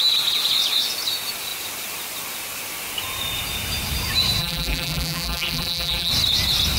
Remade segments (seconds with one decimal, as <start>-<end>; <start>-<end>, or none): 4.4-6.1